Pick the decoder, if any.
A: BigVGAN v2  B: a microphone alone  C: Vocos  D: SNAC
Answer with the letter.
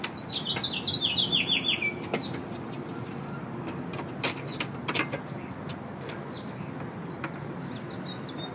B